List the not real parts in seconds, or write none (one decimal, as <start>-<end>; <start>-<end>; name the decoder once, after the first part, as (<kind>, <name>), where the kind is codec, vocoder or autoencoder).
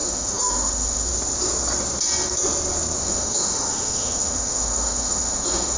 0.0-1.1 (autoencoder, DAC-VAE); 3.0-5.8